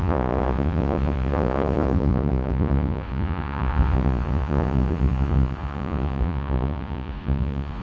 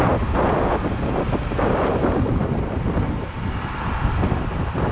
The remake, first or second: first